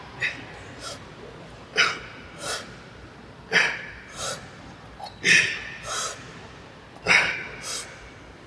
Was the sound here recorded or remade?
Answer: recorded